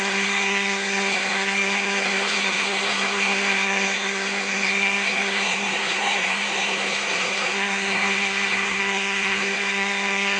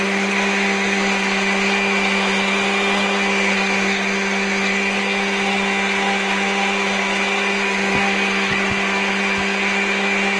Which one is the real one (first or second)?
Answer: second